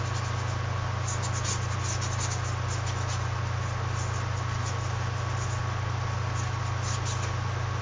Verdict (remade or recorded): recorded